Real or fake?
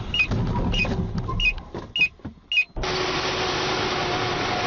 real